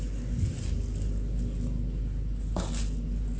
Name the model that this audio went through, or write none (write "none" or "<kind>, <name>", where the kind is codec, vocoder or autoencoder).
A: none